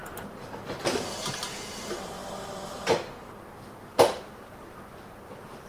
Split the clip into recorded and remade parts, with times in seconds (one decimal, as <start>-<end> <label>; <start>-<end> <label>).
0.0-5.7 remade